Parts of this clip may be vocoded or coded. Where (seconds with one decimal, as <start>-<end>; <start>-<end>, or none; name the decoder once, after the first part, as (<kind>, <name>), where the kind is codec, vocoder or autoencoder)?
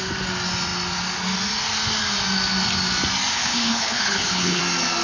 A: 3.3-4.6 (codec, HILCodec)